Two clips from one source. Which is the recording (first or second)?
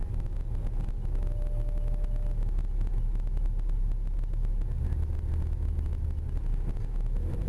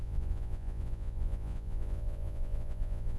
first